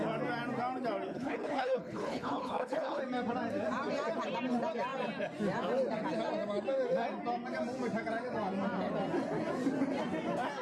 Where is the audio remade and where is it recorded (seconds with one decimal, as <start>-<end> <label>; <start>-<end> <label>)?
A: 0.0-1.1 recorded; 1.1-3.0 remade; 3.0-10.6 recorded